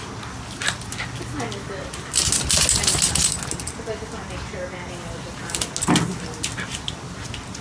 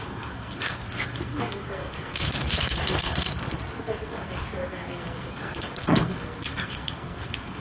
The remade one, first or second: second